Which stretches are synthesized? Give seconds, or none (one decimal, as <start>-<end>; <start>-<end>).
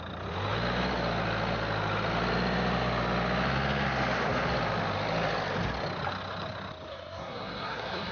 6.9-8.1